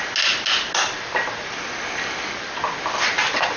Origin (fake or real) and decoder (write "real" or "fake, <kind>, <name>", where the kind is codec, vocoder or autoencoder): real